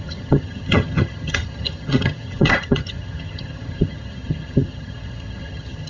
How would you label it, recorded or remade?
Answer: remade